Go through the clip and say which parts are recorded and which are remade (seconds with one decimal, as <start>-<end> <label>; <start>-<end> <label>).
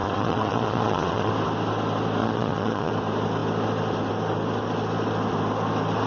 0.0-1.3 remade; 1.3-2.2 recorded; 2.2-2.9 remade; 2.9-6.1 recorded